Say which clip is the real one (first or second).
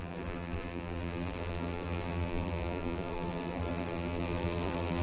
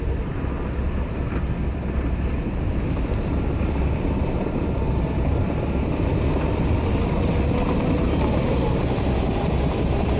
second